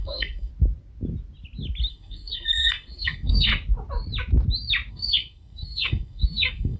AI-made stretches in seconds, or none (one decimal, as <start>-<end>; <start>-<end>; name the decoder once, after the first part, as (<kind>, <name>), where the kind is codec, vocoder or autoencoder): 0.0-0.5 (codec, SNAC); 1.9-3.5; 4.9-6.8